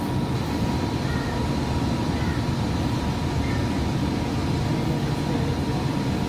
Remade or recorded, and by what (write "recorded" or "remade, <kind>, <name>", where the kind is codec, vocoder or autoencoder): recorded